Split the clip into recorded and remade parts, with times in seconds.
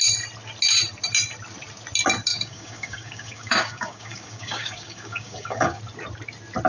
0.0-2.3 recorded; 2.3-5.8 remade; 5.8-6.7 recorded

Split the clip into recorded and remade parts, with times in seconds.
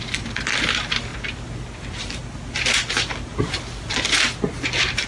0.0-5.1 recorded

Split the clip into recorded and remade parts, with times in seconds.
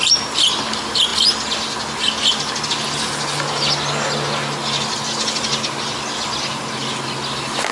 0.0-7.7 recorded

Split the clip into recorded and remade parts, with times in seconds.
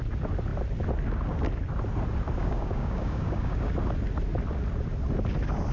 0.0-2.4 recorded; 2.4-3.7 remade; 3.7-5.7 recorded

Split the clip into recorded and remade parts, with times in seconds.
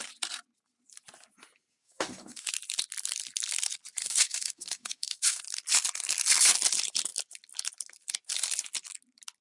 0.0-1.8 recorded; 1.8-2.5 remade; 2.5-4.0 recorded; 4.0-5.4 remade; 5.4-9.4 recorded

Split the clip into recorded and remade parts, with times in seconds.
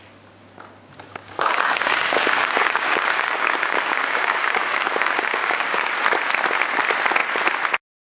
0.0-1.1 recorded; 1.1-5.9 remade; 5.9-8.0 recorded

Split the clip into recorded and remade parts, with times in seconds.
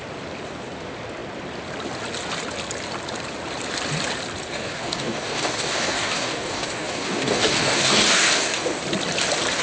0.0-4.5 recorded; 4.5-8.8 remade; 8.8-9.6 recorded